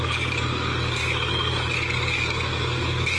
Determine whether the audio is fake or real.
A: fake